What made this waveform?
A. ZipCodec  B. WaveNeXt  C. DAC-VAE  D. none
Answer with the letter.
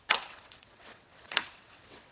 B